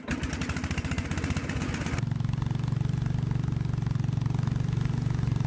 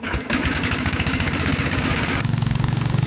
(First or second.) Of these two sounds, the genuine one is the first